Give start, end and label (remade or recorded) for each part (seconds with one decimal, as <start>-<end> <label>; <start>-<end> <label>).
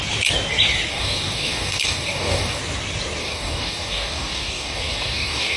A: 0.0-0.9 recorded; 0.9-2.6 remade; 2.6-3.2 recorded; 3.2-5.6 remade